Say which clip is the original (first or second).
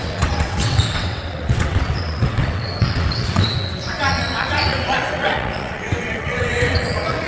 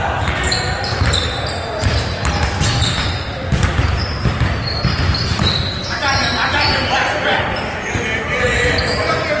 second